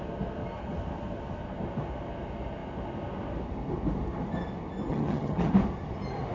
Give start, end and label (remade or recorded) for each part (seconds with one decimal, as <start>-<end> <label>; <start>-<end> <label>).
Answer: 0.0-4.9 recorded; 4.9-5.5 remade; 5.5-6.3 recorded